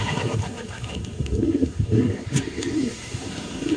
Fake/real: fake